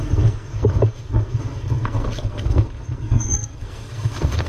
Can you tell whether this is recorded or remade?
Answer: remade